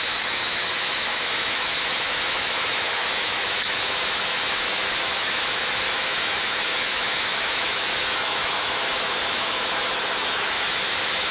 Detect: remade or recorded remade